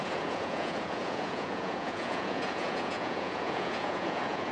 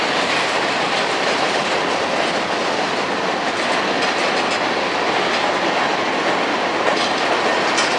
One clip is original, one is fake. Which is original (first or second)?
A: second